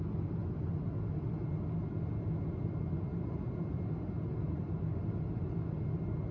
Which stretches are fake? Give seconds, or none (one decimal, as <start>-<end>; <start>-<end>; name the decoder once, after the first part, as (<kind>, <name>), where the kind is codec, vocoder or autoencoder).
3.1-4.6 (vocoder, BigVGAN v2)